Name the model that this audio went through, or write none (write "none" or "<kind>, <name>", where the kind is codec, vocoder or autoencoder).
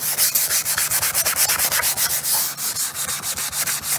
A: none